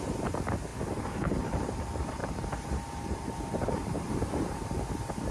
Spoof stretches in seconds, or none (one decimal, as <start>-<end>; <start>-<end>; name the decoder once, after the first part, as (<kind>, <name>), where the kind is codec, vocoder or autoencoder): 0.0-5.3 (vocoder, BigVGAN v2)